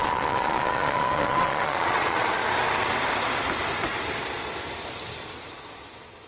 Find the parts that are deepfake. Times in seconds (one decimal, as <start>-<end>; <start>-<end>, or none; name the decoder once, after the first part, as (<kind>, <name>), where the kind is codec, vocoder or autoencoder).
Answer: 0.0-2.4 (vocoder, Vocos)